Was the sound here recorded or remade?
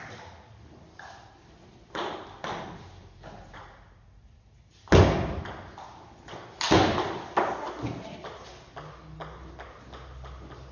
recorded